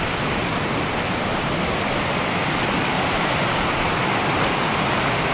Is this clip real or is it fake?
real